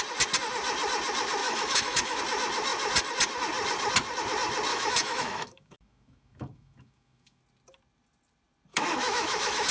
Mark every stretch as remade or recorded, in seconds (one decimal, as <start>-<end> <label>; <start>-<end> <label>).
0.0-1.4 recorded; 1.4-2.2 remade; 2.2-4.7 recorded; 4.7-7.4 remade; 7.4-8.7 recorded; 8.7-9.7 remade